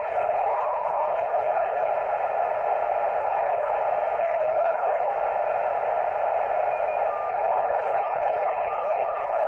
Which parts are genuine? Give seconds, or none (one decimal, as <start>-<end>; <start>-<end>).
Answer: 1.9-3.2; 3.7-4.2; 5.1-7.3